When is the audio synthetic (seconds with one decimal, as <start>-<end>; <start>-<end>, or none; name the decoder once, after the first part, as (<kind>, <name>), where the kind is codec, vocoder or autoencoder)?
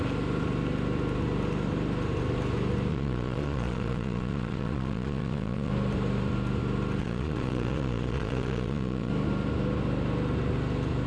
2.9-5.7 (vocoder, Vocos); 7.0-9.1